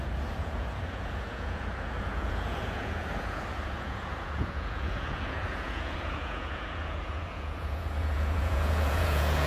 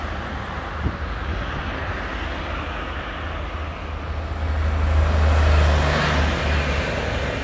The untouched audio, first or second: second